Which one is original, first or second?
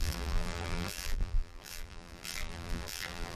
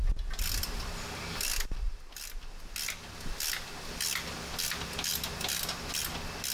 second